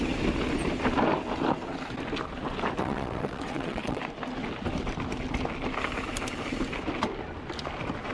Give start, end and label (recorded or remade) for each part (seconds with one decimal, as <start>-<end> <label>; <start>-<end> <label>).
0.0-2.8 recorded; 2.8-4.0 remade; 4.0-8.1 recorded